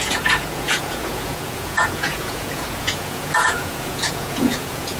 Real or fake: fake